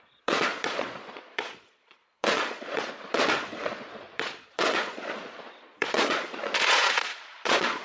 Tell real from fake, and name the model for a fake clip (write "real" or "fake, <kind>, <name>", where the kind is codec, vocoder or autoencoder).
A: fake, vocoder, Vocos